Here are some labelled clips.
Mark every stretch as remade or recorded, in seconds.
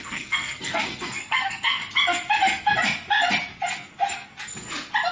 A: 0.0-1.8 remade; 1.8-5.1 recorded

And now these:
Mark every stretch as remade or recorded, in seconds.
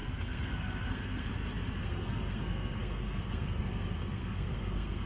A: 0.0-1.3 remade; 1.3-1.8 recorded; 1.8-5.1 remade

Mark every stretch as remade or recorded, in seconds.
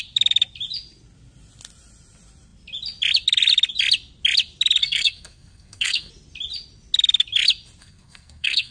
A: 0.0-4.8 recorded; 4.8-6.1 remade; 6.1-7.8 recorded; 7.8-8.7 remade